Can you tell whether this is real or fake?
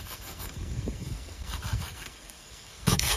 fake